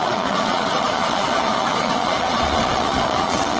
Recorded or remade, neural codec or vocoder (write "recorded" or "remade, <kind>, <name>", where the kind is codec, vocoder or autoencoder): remade, vocoder, Vocos